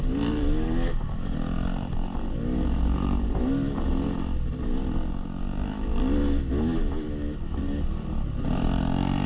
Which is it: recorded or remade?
recorded